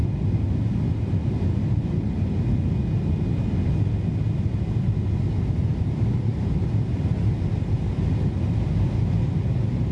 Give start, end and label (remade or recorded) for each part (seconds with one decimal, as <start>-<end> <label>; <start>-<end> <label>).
0.0-9.9 recorded